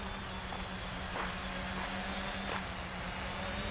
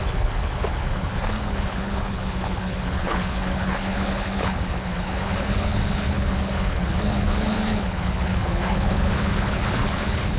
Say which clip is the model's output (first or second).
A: second